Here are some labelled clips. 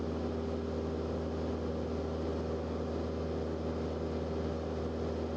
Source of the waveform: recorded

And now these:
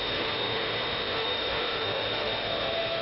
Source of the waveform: remade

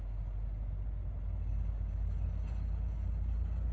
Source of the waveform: recorded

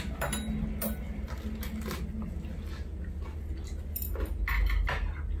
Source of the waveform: recorded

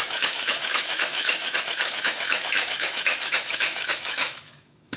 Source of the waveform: remade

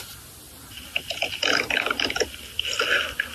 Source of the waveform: recorded